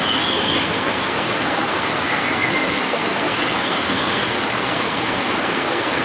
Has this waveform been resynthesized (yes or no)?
yes